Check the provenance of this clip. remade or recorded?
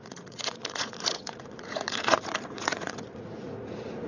remade